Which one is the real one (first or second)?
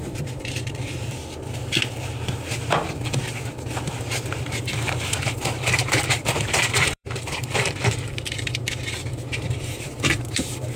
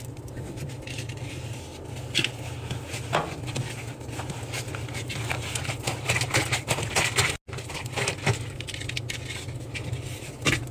second